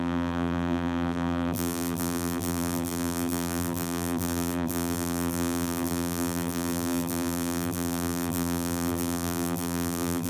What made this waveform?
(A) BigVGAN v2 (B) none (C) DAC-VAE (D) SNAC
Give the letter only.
A